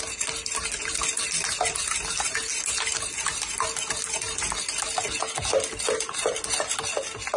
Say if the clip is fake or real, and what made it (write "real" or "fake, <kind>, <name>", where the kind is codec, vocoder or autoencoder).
real